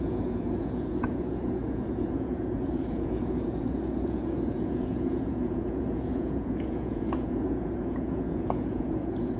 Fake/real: fake